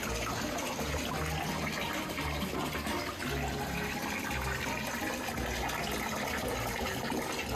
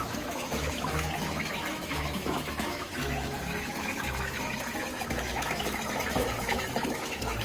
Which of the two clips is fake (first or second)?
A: second